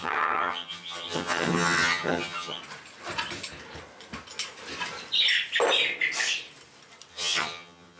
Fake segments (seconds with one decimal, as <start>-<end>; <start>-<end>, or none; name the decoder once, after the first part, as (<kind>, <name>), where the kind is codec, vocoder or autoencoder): 0.0-2.6 (vocoder, HiFi-GAN); 7.1-8.0